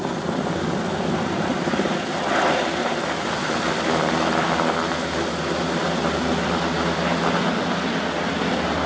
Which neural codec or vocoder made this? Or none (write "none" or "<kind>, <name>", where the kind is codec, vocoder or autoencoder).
none